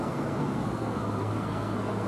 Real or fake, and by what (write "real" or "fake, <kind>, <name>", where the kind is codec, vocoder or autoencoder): fake, codec, SNAC